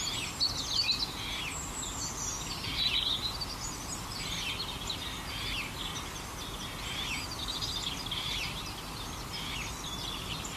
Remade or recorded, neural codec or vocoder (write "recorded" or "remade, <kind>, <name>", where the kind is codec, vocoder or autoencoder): recorded